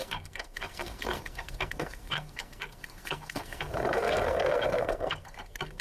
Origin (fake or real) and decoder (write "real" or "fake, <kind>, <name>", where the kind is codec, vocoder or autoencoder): fake, codec, SNAC